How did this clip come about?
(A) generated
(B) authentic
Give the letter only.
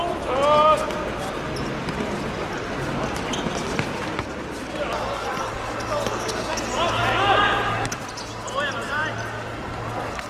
B